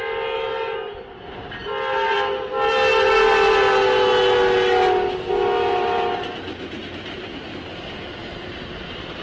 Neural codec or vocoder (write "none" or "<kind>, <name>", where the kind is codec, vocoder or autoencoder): none